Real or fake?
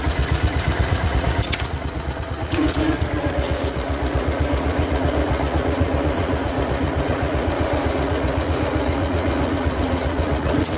fake